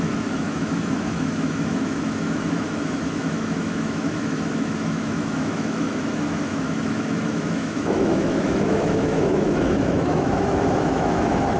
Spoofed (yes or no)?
yes